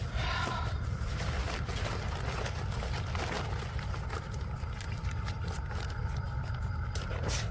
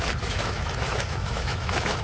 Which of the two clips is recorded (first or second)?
first